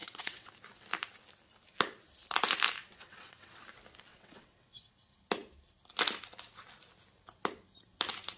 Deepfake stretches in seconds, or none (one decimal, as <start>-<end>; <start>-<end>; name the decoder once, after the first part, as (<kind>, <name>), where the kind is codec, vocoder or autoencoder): 0.0-0.5 (vocoder, WaveNeXt); 2.8-3.6; 4.1-4.9